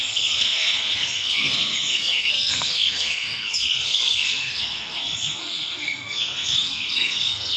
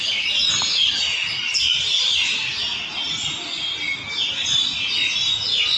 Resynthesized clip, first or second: first